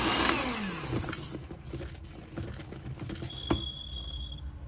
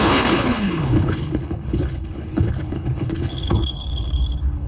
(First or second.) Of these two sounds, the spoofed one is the second